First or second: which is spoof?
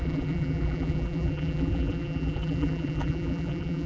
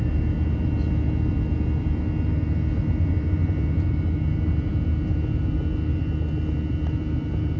first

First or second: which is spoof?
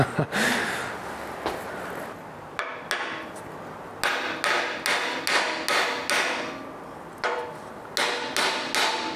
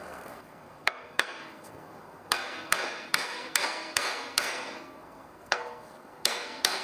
second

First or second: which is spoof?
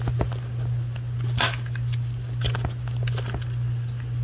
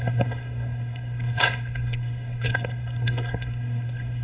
second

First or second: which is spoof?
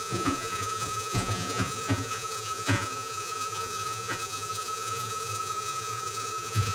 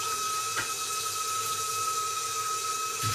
first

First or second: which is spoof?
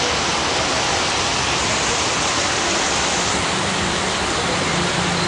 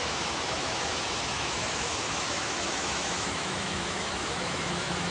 second